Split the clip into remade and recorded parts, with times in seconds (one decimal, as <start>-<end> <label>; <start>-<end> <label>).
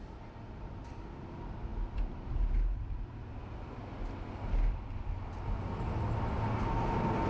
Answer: 0.0-7.3 recorded